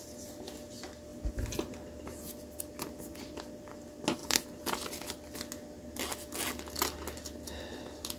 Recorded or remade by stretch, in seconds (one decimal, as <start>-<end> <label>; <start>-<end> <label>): 0.0-8.2 recorded